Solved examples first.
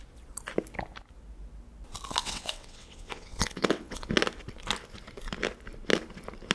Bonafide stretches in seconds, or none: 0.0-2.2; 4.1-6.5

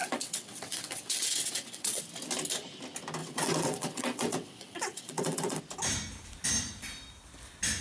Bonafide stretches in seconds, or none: 2.0-3.2; 5.6-7.8

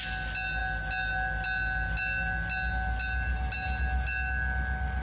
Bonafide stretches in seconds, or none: 0.0-5.0

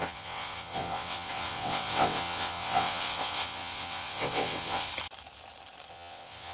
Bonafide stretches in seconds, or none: 4.9-5.9

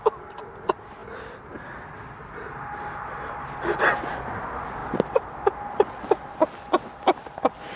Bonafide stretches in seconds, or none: 0.0-7.8